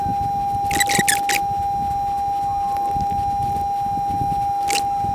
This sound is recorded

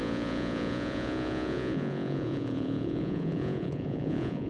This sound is remade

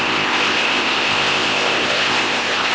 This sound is remade